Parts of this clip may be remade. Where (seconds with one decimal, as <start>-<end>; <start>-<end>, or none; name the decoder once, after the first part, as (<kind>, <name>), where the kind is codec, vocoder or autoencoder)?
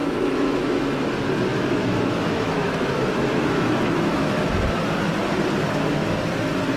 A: 0.0-0.8 (autoencoder, DAC-VAE); 1.5-4.5